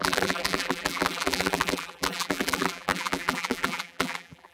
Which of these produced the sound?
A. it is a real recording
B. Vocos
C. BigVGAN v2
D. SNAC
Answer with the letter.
C